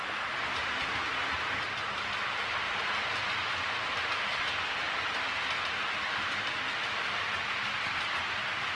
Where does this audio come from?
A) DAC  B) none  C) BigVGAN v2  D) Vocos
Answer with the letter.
B